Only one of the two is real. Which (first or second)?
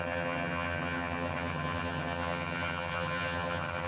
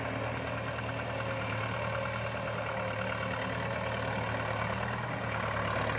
second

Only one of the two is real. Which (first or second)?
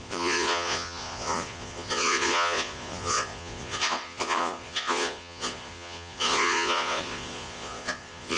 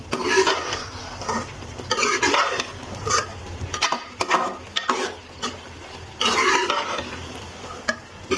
second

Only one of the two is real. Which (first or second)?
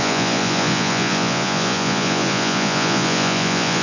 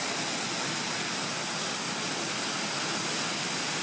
second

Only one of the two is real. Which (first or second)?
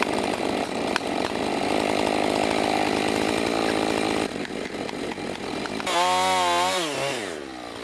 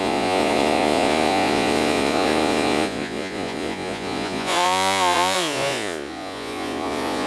first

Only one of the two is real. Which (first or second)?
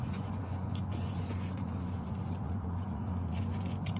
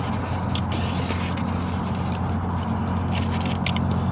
second